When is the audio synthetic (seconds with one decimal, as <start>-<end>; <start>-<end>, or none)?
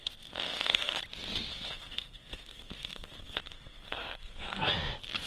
0.0-1.0; 1.5-4.7